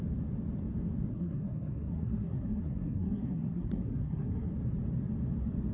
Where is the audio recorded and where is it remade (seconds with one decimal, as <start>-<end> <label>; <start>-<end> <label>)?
0.0-1.1 recorded; 1.1-4.5 remade; 4.5-5.7 recorded